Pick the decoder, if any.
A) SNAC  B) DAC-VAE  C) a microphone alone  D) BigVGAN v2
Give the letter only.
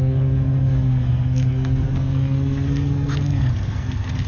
A